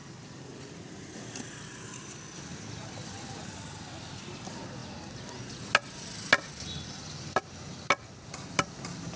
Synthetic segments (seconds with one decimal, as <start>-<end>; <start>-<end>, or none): none